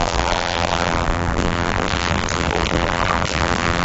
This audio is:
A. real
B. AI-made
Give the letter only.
B